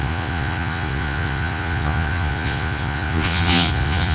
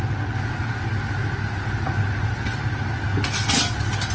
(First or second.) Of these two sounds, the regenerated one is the first